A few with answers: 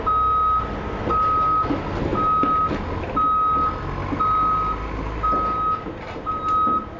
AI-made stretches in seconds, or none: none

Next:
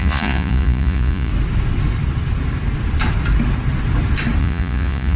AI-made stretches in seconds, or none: 0.0-1.3 (vocoder, Vocos); 4.4-5.2